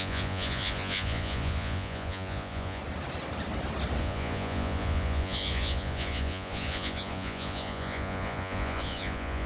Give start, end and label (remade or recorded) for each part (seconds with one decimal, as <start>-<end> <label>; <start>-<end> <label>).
0.0-2.8 remade; 2.8-4.0 recorded; 4.0-9.5 remade